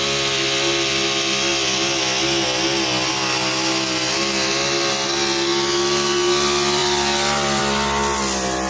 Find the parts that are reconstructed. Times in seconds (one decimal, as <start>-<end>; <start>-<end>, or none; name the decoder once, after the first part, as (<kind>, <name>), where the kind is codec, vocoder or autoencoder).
none